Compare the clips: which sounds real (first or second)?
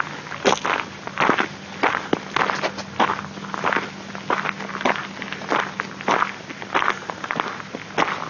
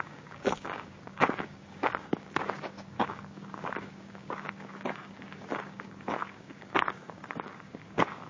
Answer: first